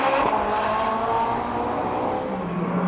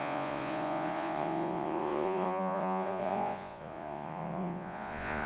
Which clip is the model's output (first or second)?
second